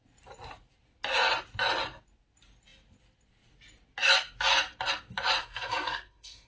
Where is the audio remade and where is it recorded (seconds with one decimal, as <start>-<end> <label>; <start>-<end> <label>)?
0.0-5.4 recorded; 5.4-6.5 remade